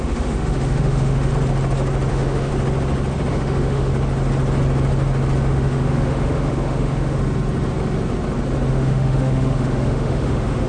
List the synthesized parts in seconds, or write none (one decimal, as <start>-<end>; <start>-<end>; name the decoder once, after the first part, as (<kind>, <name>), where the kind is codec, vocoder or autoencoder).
0.0-1.3 (autoencoder, DAC-VAE); 2.1-2.5; 3.3-3.9; 5.5-7.2; 8.7-10.7